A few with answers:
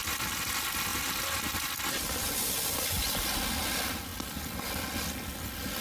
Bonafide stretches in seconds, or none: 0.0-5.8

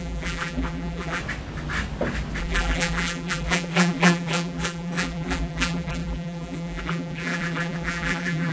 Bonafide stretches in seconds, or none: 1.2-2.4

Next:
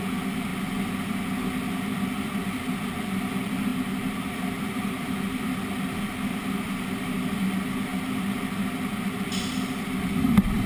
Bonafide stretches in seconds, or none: 0.0-10.7

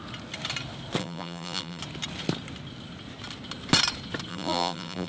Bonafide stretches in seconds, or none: 0.0-1.0; 1.8-4.3